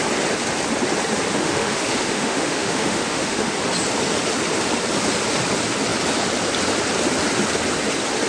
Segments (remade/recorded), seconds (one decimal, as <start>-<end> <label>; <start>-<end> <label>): 0.0-1.3 recorded; 1.3-3.5 remade; 3.5-8.3 recorded